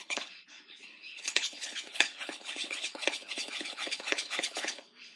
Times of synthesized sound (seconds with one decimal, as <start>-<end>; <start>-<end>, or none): 0.0-5.2